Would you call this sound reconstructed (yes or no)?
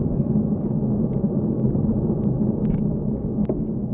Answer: no